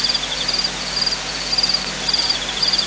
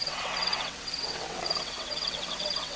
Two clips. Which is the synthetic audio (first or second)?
second